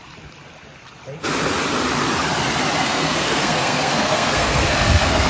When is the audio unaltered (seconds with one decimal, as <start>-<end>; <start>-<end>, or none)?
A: 0.0-2.8

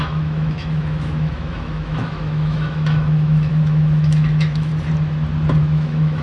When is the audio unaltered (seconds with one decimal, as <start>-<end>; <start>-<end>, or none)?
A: 4.7-5.6

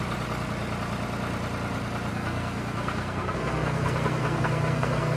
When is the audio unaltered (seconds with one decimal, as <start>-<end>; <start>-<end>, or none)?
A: 0.0-2.1

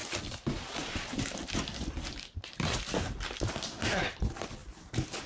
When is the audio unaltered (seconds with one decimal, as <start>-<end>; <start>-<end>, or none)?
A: 4.6-5.3